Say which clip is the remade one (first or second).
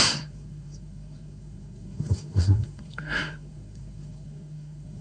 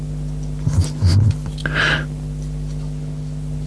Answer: first